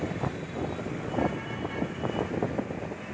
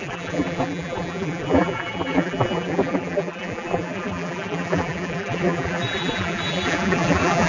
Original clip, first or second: first